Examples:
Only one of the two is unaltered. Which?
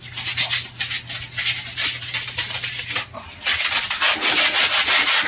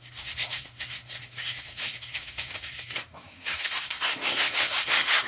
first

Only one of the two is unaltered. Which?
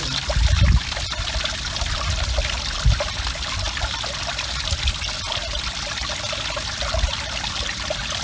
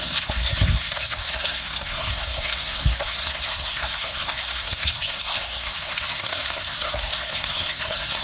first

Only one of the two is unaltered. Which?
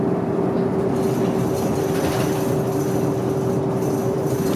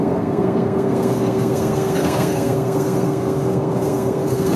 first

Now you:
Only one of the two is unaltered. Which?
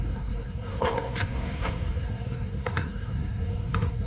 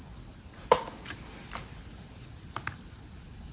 second